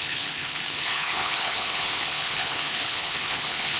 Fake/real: fake